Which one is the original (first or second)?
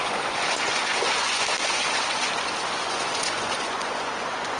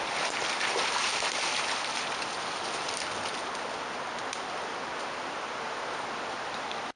second